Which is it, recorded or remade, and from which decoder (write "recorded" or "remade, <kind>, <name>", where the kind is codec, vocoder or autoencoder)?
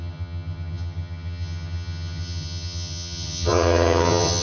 remade, vocoder, HiFi-GAN